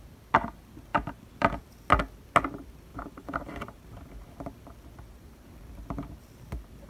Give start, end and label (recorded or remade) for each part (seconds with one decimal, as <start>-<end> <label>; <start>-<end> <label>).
0.0-0.9 recorded; 0.9-1.6 remade; 1.6-2.9 recorded; 2.9-4.1 remade; 4.1-6.9 recorded